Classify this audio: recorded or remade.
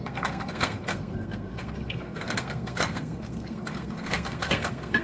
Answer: remade